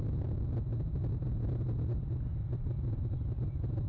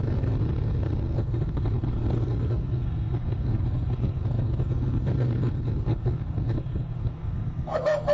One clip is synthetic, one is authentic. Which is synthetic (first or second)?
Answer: second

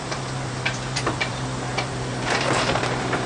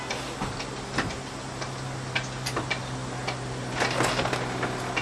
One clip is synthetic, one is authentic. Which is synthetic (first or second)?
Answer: first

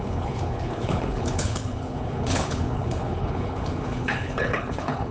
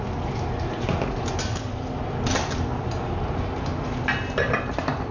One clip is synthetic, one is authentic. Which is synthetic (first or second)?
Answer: first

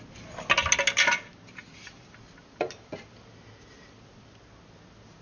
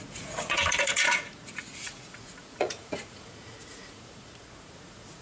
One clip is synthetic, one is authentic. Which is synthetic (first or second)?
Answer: second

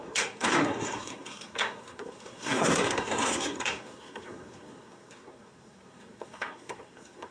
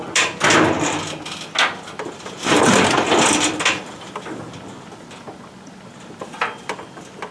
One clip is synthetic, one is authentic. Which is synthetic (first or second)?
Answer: first